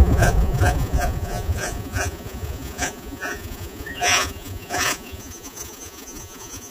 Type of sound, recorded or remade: remade